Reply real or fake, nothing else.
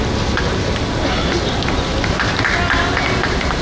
real